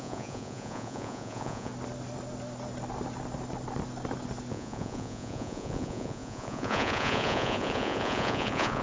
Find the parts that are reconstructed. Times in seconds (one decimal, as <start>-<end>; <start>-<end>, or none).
0.0-1.7; 4.5-8.8